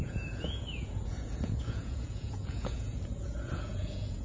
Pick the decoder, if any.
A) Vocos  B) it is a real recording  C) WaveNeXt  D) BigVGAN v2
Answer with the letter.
A